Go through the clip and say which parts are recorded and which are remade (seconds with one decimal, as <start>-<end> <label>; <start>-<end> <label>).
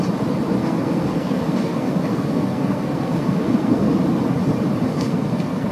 0.0-0.6 recorded; 0.6-4.0 remade; 4.0-4.9 recorded; 4.9-5.7 remade